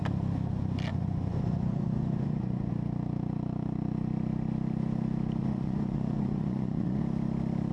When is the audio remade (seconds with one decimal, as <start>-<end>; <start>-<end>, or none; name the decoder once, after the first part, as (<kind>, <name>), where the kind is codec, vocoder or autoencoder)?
0.9-2.7 (vocoder, Vocos); 5.4-7.0